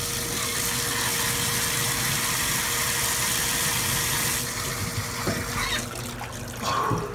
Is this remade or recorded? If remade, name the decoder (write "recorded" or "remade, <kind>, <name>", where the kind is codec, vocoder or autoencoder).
recorded